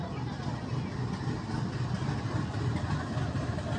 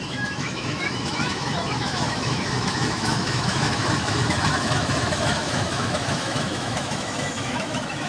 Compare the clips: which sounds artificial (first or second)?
second